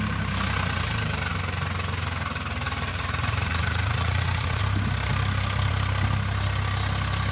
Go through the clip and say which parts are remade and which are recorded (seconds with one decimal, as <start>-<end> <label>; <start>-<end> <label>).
0.0-2.9 recorded; 2.9-4.6 remade; 4.6-7.3 recorded